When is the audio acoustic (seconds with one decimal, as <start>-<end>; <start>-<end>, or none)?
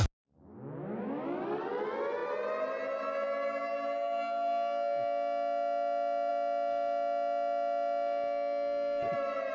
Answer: 0.0-9.5